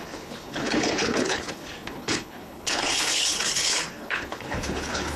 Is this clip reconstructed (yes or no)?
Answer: yes